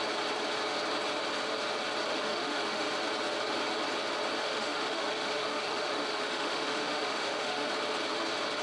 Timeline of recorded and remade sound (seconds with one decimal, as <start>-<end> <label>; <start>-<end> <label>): 0.0-2.1 recorded; 2.1-2.9 remade; 2.9-4.4 recorded; 4.4-7.7 remade; 7.7-8.6 recorded